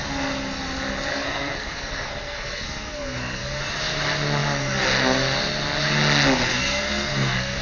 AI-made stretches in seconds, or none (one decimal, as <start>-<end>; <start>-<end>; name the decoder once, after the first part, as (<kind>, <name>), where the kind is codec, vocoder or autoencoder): 1.1-3.6 (codec, SNAC); 6.5-7.6